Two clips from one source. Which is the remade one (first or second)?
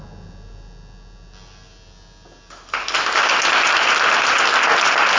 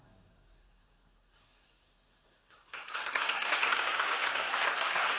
second